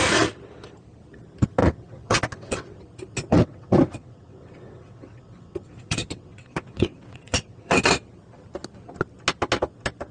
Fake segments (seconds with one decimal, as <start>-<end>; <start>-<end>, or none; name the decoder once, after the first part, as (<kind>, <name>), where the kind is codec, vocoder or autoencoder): 1.6-2.8 (vocoder, WaveNeXt); 3.3-7.8